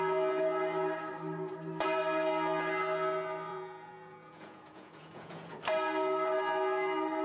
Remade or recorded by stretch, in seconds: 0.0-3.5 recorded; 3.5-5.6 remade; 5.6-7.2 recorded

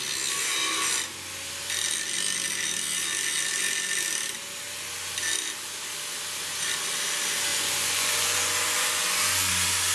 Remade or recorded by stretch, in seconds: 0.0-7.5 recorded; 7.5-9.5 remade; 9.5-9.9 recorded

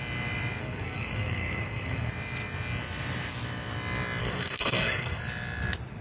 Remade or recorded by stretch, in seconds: 0.0-0.6 recorded; 0.6-2.1 remade; 2.1-4.2 recorded; 4.2-5.2 remade; 5.2-6.0 recorded

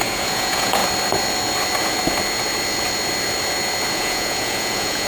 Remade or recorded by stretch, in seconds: 0.0-0.8 remade; 0.8-3.9 recorded; 3.9-5.1 remade

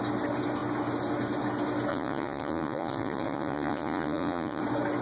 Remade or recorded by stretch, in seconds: 0.0-1.9 recorded; 1.9-4.6 remade; 4.6-5.0 recorded

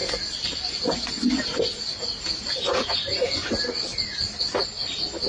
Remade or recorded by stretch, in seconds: 0.0-0.7 remade; 0.7-5.3 recorded

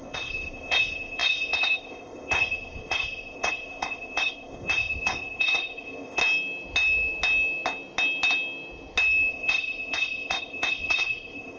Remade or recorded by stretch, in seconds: 0.0-6.2 remade; 6.2-9.3 recorded; 9.3-11.6 remade

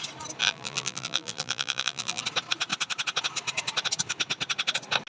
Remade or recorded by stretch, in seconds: 0.0-0.4 recorded; 0.4-2.2 remade; 2.2-5.1 recorded